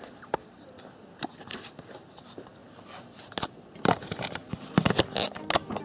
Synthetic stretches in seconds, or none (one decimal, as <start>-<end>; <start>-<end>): none